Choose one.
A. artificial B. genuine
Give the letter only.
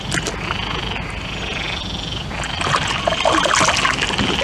B